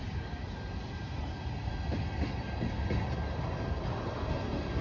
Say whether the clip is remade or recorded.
recorded